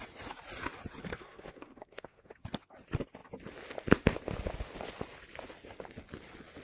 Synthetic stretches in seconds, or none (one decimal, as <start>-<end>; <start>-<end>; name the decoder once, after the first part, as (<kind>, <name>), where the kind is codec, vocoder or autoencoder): 1.0-2.4 (codec, SNAC)